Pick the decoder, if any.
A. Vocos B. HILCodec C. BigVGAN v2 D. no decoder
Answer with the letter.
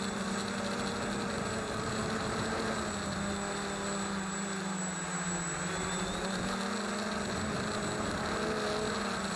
D